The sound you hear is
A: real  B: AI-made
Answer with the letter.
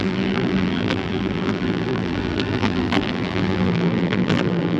B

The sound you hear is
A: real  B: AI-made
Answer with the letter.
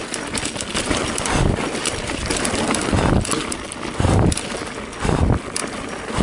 A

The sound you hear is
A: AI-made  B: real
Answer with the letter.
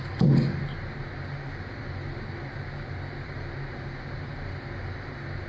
B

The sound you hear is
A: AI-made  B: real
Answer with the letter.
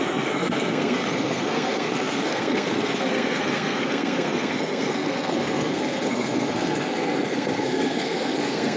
A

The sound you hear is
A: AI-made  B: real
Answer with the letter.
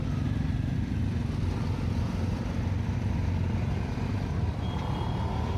B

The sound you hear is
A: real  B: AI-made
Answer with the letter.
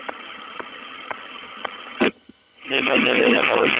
B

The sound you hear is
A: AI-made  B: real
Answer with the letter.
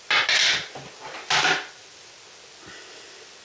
B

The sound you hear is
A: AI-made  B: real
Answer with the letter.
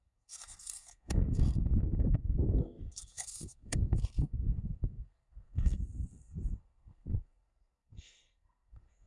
A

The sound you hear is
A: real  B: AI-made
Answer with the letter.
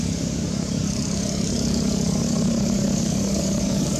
B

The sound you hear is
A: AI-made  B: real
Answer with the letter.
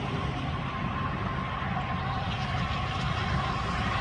B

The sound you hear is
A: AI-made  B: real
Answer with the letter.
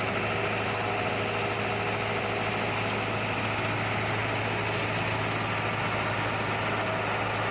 B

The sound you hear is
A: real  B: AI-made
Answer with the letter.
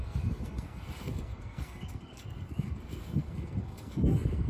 B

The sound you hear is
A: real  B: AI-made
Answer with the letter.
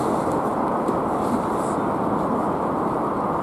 A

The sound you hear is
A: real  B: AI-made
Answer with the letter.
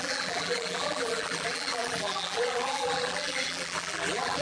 B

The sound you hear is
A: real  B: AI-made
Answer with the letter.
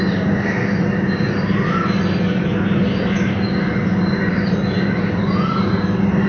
A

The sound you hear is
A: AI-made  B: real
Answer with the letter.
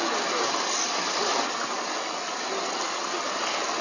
B